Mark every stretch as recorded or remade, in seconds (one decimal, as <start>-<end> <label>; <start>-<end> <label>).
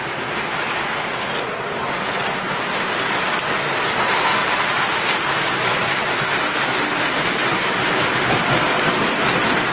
0.0-4.4 recorded; 4.4-5.3 remade; 5.3-9.7 recorded